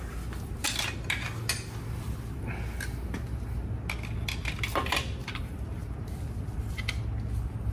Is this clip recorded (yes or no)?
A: yes